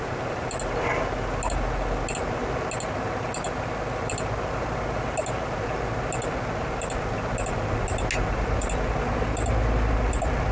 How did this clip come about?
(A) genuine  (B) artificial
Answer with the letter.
A